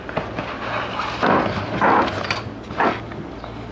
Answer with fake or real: real